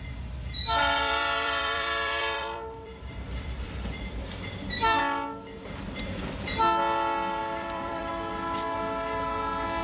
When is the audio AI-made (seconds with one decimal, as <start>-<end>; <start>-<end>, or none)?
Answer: 0.8-5.0; 7.4-8.1

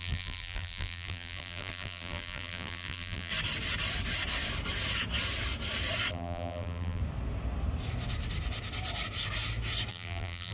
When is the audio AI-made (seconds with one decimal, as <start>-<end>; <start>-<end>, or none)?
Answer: 0.0-3.3; 6.1-7.0; 9.9-10.5